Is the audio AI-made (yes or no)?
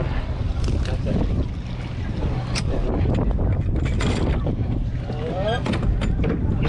no